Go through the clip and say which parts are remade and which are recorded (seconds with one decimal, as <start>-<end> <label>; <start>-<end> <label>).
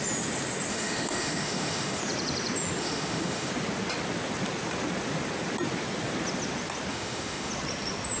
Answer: 0.0-0.7 recorded; 0.7-2.0 remade; 2.0-2.8 recorded; 2.8-3.5 remade; 3.5-6.9 recorded; 6.9-7.5 remade; 7.5-8.2 recorded